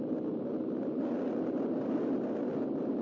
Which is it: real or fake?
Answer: real